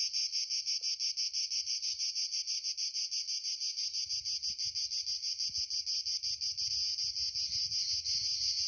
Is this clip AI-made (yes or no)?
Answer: no